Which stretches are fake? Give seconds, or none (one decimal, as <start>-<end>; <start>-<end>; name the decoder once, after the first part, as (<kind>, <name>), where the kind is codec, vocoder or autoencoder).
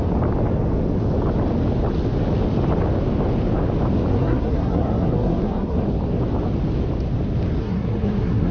4.1-5.8 (codec, SNAC); 7.6-8.5